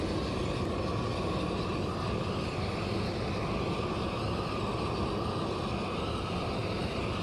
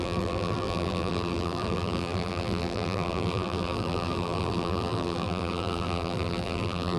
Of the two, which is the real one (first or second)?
first